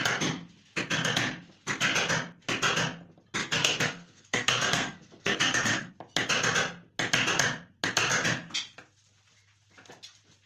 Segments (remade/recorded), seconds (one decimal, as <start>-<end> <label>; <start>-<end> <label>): 0.0-3.4 recorded; 3.4-5.9 remade; 5.9-10.5 recorded